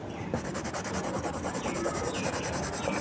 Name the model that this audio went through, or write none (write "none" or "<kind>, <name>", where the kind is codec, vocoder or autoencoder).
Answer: none